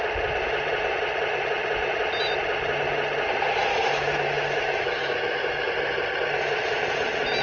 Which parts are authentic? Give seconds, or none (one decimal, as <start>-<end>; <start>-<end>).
0.0-3.7; 5.7-7.4